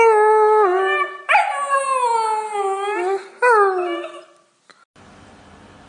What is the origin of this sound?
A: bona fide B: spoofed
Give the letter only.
A